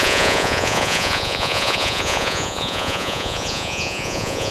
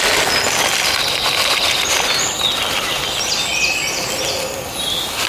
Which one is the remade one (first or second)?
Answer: first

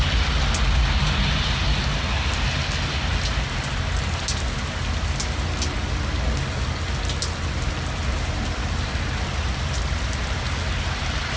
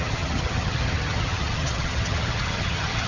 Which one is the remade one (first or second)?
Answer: second